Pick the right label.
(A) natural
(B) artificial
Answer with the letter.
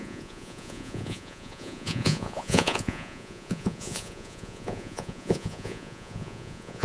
B